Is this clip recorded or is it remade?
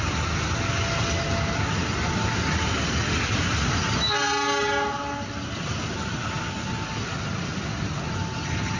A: recorded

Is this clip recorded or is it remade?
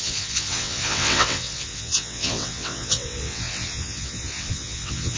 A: remade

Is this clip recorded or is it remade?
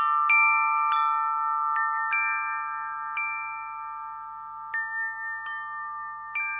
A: recorded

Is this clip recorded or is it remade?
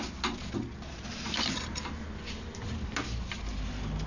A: recorded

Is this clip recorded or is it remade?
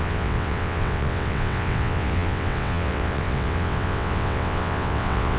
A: remade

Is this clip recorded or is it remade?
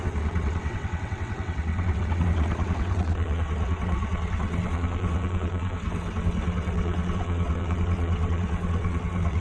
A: remade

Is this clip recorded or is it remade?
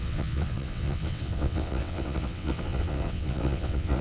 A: remade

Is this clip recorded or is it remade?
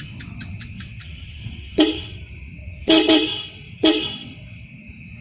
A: remade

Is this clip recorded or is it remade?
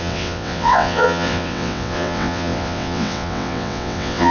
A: remade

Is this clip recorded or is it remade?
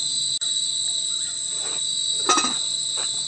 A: recorded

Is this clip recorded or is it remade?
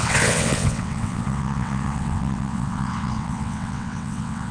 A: remade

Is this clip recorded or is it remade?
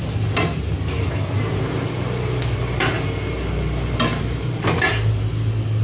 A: recorded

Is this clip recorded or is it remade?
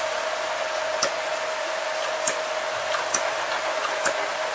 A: recorded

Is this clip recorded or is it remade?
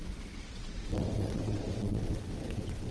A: remade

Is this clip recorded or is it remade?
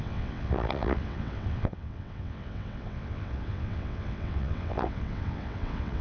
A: remade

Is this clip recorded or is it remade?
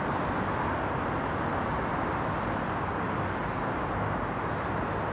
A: recorded